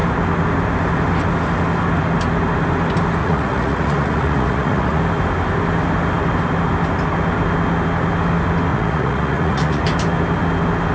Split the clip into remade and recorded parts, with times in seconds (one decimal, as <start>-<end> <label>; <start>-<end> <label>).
0.0-3.2 recorded; 3.2-5.0 remade; 5.0-8.7 recorded; 8.7-9.8 remade; 9.8-10.9 recorded